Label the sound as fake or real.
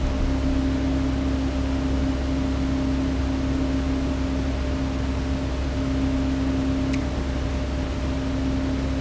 real